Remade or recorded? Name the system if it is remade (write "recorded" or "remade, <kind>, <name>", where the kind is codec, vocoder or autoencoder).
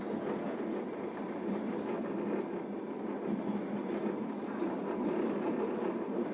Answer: recorded